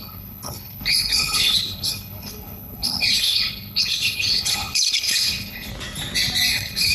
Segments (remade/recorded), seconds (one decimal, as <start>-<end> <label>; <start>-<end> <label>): 0.0-5.7 remade; 5.7-6.5 recorded; 6.5-6.9 remade